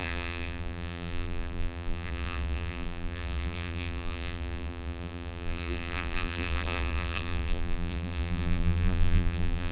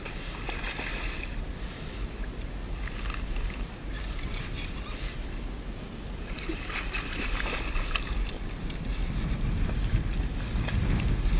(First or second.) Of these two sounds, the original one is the second